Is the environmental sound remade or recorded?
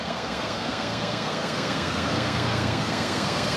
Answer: remade